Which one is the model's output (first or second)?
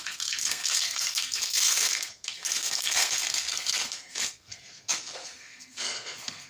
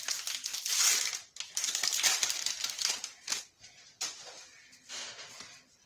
first